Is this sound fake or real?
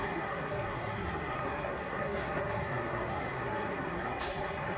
fake